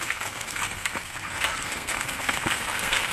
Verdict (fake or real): fake